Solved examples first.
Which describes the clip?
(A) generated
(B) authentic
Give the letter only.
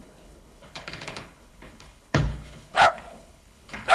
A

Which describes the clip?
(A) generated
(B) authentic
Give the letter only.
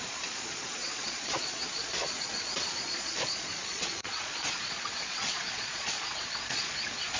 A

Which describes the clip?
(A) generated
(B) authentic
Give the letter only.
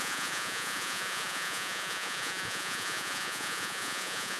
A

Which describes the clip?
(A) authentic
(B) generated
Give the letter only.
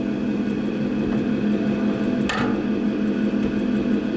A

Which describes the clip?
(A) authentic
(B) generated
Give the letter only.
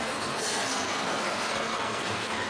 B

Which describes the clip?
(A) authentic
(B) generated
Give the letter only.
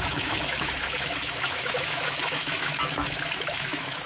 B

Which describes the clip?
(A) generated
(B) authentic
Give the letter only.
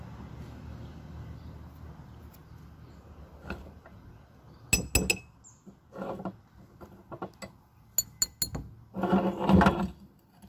B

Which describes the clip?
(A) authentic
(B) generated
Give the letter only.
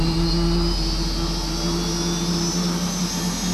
A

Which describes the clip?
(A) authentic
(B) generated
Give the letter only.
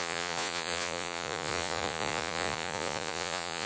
B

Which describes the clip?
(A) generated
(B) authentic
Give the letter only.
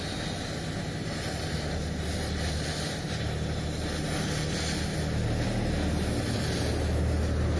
B